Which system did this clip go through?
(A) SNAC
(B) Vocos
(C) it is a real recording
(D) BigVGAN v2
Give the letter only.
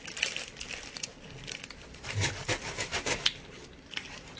D